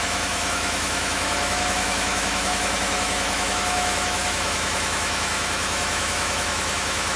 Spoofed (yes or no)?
yes